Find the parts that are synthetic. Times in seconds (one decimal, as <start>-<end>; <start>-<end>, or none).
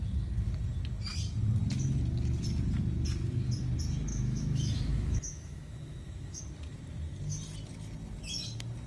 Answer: 4.1-6.4